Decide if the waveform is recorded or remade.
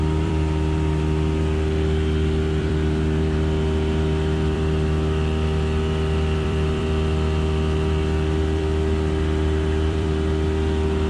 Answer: remade